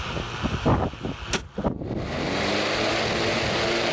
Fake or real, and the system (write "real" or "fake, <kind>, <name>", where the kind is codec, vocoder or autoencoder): real